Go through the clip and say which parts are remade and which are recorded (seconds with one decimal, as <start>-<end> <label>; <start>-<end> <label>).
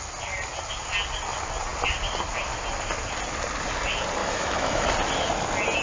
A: 0.0-4.2 recorded; 4.2-4.9 remade; 4.9-5.8 recorded